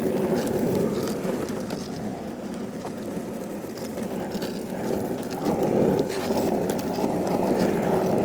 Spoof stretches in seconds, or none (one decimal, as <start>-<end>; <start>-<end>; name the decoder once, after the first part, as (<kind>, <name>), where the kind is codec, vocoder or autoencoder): none